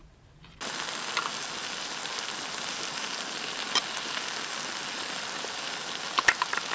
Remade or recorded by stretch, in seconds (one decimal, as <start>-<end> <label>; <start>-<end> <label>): 0.0-6.7 recorded